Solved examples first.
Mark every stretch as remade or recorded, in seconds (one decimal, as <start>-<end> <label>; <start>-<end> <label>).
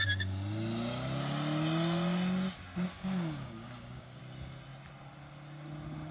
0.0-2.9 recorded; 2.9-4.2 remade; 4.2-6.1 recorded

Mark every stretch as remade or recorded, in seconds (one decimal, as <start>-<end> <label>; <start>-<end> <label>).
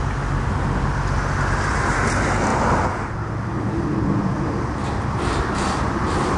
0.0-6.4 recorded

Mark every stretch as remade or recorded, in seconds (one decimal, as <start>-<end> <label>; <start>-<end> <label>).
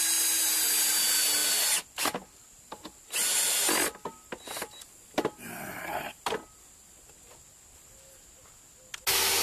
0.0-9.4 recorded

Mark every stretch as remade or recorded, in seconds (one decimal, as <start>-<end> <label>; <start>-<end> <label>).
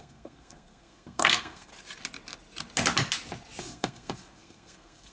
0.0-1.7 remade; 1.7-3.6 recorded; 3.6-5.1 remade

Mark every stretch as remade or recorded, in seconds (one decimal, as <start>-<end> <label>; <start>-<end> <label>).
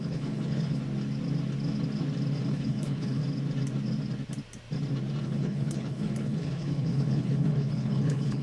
0.0-0.8 remade; 0.8-2.5 recorded; 2.5-3.2 remade; 3.2-5.2 recorded; 5.2-8.4 remade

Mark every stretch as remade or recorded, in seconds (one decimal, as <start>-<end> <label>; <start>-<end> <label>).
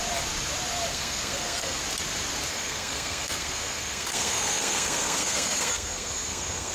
0.0-0.9 recorded; 0.9-1.8 remade; 1.8-2.5 recorded; 2.5-6.7 remade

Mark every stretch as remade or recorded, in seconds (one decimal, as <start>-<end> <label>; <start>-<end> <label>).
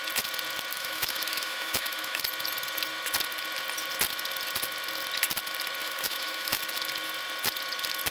0.0-0.7 recorded; 0.7-2.2 remade; 2.2-5.8 recorded; 5.8-6.6 remade; 6.6-8.1 recorded